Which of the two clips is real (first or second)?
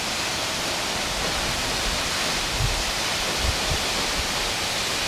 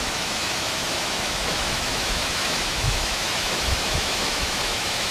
first